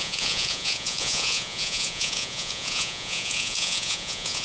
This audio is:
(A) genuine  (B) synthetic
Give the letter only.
B